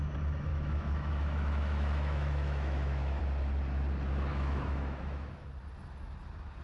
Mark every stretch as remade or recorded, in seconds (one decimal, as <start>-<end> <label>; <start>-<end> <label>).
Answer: 0.0-0.5 recorded; 0.5-3.2 remade; 3.2-4.3 recorded; 4.3-5.3 remade; 5.3-6.6 recorded

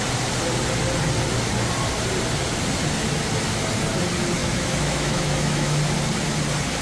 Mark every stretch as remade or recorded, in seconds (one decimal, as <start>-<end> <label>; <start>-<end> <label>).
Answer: 0.0-4.4 recorded; 4.4-5.8 remade; 5.8-6.8 recorded

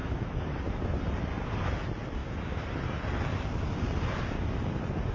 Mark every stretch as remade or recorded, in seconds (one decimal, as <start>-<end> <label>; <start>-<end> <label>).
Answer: 0.0-0.6 remade; 0.6-5.1 recorded